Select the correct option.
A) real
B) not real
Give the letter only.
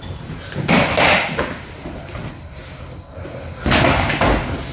A